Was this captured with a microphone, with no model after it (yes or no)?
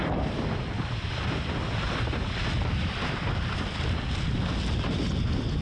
yes